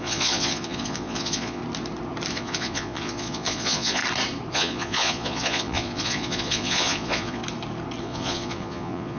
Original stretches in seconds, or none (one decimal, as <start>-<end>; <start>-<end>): 1.6-2.3; 4.0-4.5; 7.4-8.0